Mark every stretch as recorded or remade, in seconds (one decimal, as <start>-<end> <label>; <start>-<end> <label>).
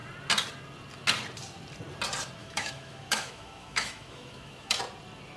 0.0-2.4 recorded; 2.4-4.8 remade; 4.8-5.4 recorded